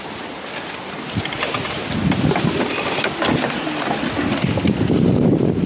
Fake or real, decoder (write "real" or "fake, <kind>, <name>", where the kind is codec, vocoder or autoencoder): real